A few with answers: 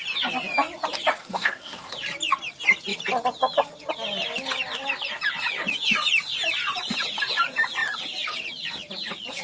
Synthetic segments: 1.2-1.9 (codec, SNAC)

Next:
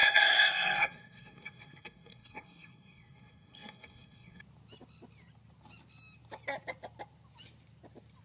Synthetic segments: 0.0-4.4 (codec, SNAC)